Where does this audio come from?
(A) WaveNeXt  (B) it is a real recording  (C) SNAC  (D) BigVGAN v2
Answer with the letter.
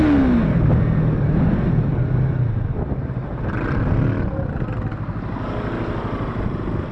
B